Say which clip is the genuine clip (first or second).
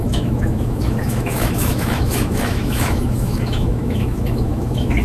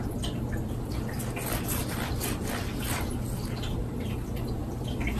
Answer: second